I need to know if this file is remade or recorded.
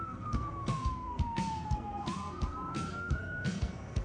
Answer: remade